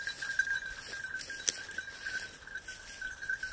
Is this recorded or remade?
recorded